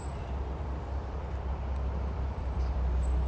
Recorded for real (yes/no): no